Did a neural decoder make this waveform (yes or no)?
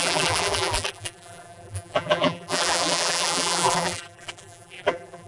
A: yes